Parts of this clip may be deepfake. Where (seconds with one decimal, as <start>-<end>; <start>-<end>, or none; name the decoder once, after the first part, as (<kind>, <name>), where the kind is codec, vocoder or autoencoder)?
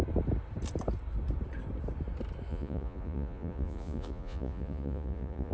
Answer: 2.5-5.5 (vocoder, Vocos)